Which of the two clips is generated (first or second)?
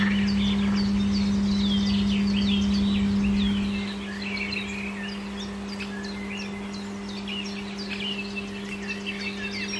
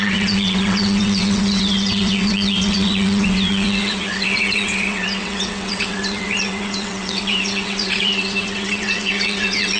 second